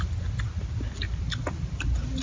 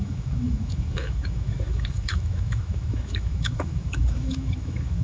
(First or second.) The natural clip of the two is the first